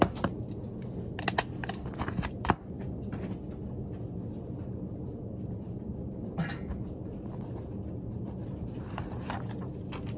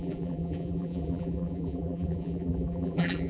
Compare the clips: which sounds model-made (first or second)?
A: second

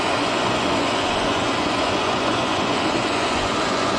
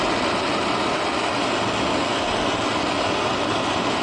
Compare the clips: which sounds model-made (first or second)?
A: first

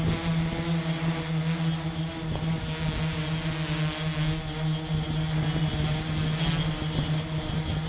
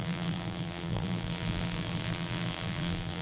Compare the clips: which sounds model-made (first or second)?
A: second